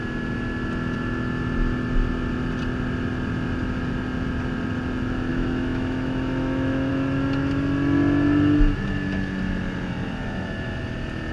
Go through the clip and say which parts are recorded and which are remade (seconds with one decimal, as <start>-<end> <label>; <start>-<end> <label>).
0.0-5.3 recorded; 5.3-6.9 remade; 6.9-11.3 recorded